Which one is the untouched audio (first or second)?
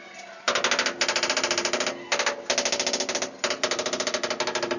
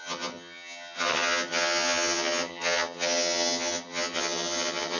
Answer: first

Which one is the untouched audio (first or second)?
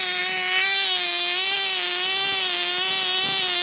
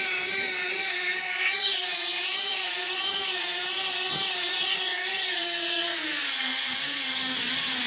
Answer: first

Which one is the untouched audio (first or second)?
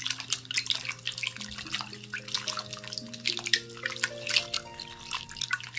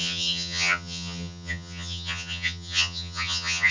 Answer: first